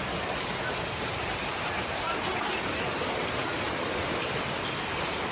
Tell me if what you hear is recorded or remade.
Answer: recorded